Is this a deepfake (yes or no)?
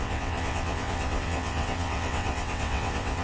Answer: yes